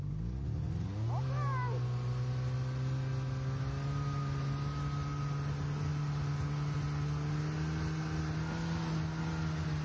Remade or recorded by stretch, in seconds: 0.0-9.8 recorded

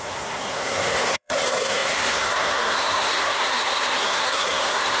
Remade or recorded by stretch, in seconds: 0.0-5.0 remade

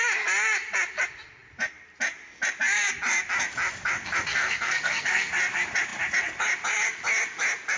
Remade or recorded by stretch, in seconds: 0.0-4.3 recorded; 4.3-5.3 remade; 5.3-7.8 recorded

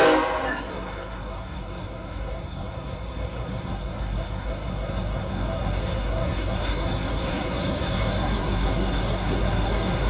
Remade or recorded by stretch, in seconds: 0.0-0.5 recorded; 0.5-10.1 remade